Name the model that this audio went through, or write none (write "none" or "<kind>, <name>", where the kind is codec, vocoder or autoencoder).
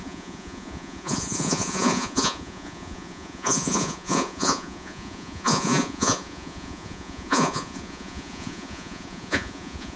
vocoder, Vocos